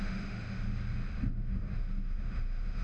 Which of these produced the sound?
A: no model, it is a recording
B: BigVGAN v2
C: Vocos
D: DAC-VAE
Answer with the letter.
D